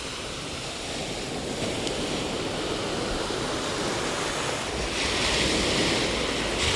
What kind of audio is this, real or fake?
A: real